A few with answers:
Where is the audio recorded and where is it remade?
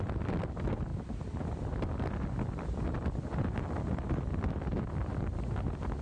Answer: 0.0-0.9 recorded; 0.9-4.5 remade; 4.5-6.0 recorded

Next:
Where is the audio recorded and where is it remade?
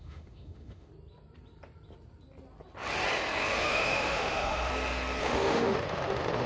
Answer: 0.0-0.9 remade; 0.9-3.6 recorded; 3.6-4.7 remade; 4.7-5.2 recorded; 5.2-6.5 remade